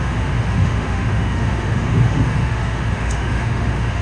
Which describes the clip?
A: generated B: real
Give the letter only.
A